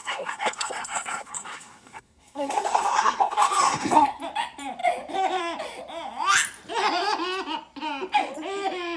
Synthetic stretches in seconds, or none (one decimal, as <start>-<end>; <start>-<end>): 0.0-4.2